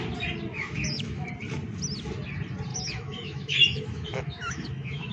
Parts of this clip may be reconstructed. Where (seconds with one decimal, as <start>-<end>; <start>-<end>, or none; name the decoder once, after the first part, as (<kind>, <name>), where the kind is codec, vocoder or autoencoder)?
0.5-1.3 (autoencoder, DAC-VAE); 2.7-5.1